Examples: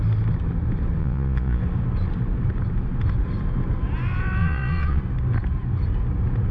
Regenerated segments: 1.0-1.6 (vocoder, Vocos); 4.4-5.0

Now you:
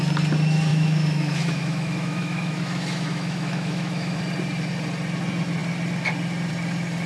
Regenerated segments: 0.7-4.2 (autoencoder, DAC-VAE)

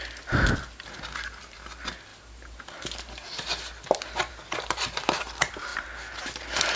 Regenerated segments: none